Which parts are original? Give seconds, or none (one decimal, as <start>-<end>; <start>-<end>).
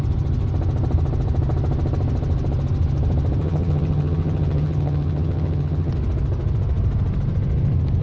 0.0-3.4; 5.9-8.0